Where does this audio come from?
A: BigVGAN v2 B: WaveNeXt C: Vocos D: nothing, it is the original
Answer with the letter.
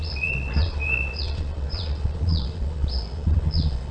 C